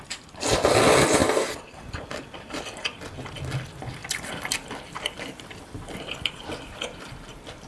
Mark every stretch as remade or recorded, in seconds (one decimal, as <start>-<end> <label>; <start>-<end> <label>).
0.0-4.0 recorded; 4.0-7.7 remade

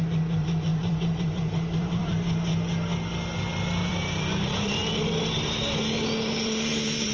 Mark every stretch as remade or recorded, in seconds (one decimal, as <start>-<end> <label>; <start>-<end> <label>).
0.0-2.5 remade; 2.5-3.9 recorded; 3.9-4.8 remade; 4.8-6.3 recorded; 6.3-7.1 remade

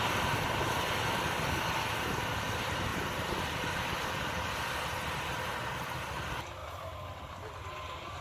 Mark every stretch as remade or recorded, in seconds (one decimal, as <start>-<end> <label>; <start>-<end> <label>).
0.0-2.9 recorded; 2.9-4.5 remade; 4.5-8.2 recorded

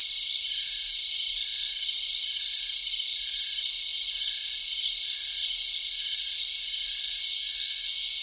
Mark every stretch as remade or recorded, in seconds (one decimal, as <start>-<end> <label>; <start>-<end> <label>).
0.0-3.0 remade; 3.0-8.2 recorded

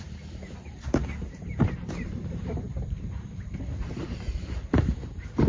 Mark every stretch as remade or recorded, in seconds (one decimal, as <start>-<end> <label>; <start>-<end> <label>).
0.0-5.5 remade

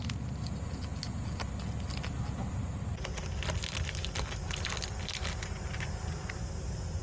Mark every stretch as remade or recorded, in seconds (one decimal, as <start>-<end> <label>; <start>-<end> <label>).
0.0-7.0 recorded

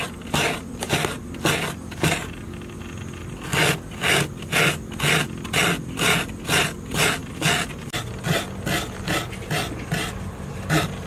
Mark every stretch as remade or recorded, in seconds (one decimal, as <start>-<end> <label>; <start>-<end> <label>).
0.0-11.1 recorded

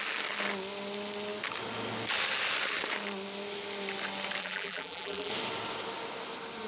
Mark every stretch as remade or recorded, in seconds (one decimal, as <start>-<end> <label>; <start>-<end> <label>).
0.0-4.4 recorded; 4.4-5.3 remade; 5.3-6.7 recorded